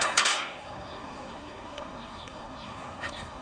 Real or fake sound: fake